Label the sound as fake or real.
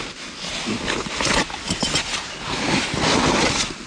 real